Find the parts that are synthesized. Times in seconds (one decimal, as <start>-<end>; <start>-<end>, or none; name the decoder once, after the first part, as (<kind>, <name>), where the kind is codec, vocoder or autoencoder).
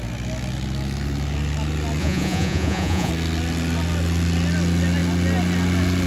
2.0-3.1 (vocoder, Vocos)